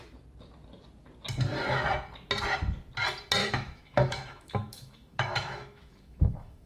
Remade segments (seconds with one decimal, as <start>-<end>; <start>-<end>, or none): 3.4-6.7